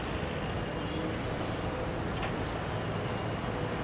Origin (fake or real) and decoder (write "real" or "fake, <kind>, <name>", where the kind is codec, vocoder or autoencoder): real